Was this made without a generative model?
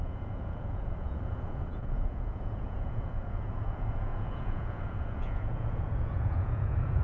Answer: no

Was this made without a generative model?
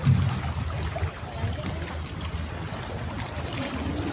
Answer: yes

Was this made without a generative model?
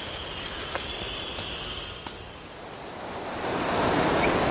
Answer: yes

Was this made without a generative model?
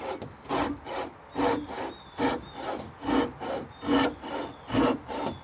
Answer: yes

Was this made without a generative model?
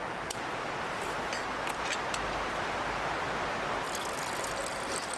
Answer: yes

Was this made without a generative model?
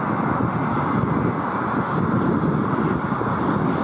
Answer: yes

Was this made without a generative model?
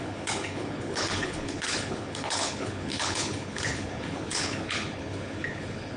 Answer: no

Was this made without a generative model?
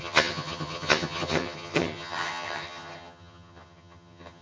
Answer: no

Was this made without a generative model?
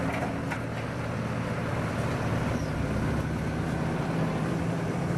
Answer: no